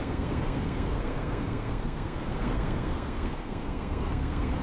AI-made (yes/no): yes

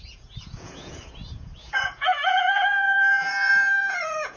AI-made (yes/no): yes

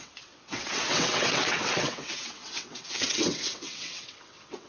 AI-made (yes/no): yes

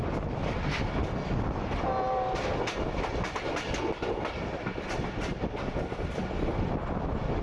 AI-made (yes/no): no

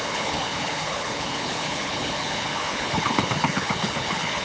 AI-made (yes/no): yes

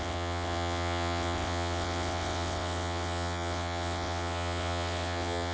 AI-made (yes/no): yes